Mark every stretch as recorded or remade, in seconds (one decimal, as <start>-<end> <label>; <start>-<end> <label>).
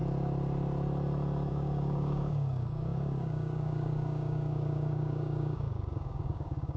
0.0-1.5 recorded; 1.5-6.8 remade